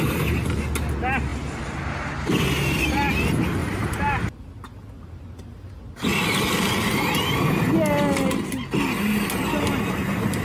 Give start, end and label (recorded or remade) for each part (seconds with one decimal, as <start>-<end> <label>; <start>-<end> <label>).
0.0-1.3 recorded; 1.3-2.8 remade; 2.8-3.6 recorded; 3.6-4.5 remade; 4.5-10.4 recorded